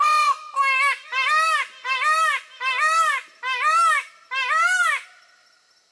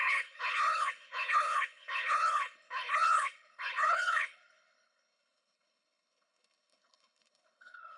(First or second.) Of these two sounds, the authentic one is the first